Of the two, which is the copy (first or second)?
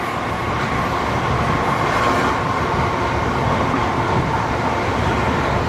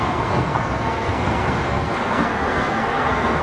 second